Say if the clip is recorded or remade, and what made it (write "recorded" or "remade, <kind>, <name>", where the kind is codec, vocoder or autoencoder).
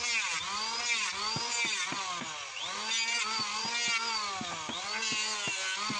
recorded